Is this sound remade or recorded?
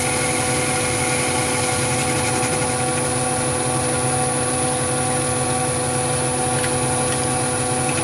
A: recorded